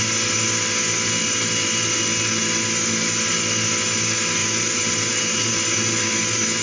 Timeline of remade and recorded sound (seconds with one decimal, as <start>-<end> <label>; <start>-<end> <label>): 0.0-4.4 recorded; 4.4-5.5 remade; 5.5-6.6 recorded